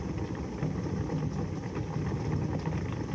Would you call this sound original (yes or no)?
yes